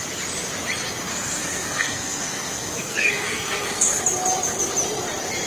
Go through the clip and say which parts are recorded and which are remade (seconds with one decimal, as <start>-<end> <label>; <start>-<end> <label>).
0.0-1.1 recorded; 1.1-4.0 remade; 4.0-5.5 recorded